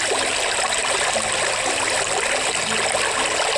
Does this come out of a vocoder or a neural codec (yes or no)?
no